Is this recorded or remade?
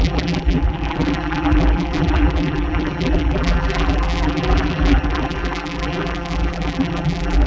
remade